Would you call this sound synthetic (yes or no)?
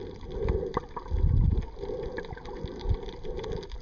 no